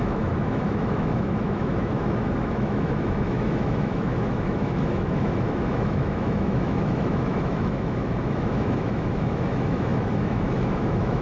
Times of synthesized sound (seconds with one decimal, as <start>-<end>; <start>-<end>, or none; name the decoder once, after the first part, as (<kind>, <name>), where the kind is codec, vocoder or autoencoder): 0.0-11.2 (autoencoder, DAC-VAE)

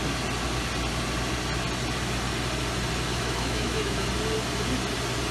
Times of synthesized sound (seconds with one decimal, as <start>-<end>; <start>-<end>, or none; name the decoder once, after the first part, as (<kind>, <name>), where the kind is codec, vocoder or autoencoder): 3.1-4.1 (autoencoder, DAC-VAE)

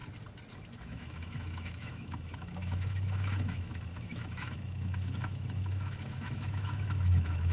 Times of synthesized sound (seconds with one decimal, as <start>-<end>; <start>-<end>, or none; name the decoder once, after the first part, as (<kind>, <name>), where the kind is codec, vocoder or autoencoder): 0.8-7.5 (autoencoder, DAC-VAE)